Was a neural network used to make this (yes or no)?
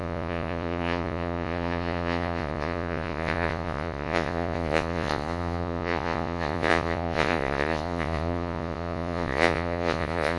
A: yes